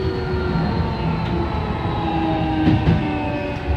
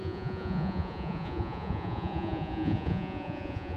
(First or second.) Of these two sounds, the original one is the first